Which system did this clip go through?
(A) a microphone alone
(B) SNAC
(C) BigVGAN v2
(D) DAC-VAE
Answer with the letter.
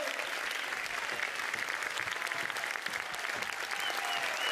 A